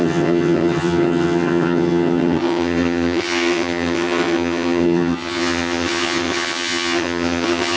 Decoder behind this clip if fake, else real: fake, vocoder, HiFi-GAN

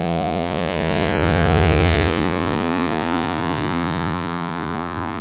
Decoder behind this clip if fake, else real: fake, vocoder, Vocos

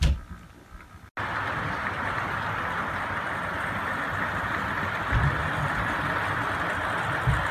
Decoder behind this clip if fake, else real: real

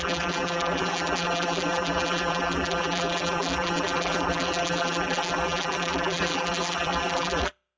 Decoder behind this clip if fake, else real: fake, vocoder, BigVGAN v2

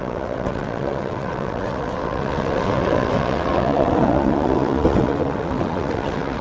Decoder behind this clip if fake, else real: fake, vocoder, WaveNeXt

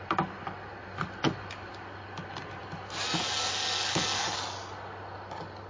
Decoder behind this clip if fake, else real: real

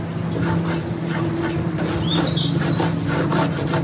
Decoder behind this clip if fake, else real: real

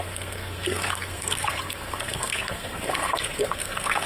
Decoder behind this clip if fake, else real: fake, codec, SNAC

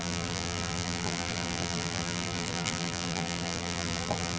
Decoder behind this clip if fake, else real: fake, vocoder, BigVGAN v2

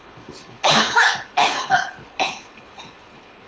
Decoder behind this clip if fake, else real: fake, codec, HILCodec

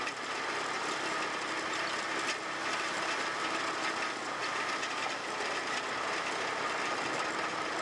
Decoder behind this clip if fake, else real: real